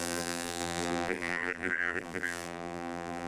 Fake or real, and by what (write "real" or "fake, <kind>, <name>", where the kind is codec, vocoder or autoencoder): fake, vocoder, BigVGAN v2